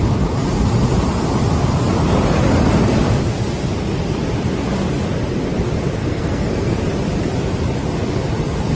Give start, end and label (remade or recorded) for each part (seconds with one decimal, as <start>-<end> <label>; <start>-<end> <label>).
0.0-6.0 recorded; 6.0-6.8 remade; 6.8-8.8 recorded

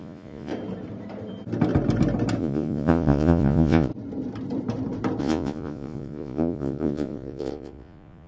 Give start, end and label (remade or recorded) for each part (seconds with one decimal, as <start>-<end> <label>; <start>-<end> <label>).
0.0-0.5 remade; 0.5-2.4 recorded; 2.4-3.9 remade; 3.9-5.2 recorded; 5.2-8.3 remade

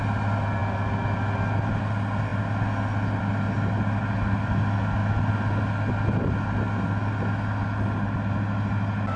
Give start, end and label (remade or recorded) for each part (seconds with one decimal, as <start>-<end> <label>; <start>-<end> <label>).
0.0-9.2 recorded

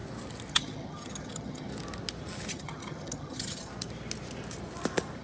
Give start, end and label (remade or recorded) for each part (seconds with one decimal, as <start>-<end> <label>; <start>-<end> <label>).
0.0-0.5 recorded; 0.5-1.7 remade; 1.7-2.5 recorded; 2.5-3.7 remade; 3.7-5.2 recorded